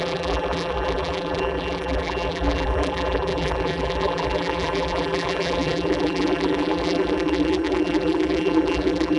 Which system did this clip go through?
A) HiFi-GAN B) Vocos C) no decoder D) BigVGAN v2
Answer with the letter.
D